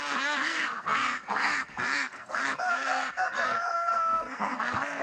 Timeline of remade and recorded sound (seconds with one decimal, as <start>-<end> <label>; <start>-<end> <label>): 0.0-5.0 remade

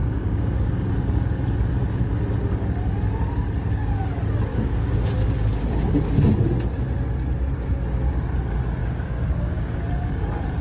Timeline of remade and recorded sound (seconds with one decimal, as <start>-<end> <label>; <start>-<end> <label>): 0.0-0.7 remade; 0.7-4.5 recorded; 4.5-5.8 remade; 5.8-8.8 recorded; 8.8-9.8 remade; 9.8-10.6 recorded

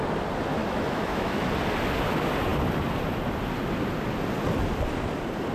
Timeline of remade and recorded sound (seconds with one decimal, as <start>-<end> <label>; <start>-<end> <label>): 0.0-0.6 recorded; 0.6-1.5 remade; 1.5-5.5 recorded